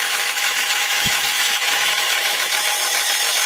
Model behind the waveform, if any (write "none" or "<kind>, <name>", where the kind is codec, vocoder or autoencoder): autoencoder, DAC-VAE